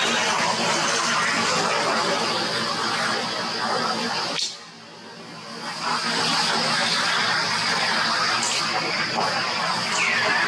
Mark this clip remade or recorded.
recorded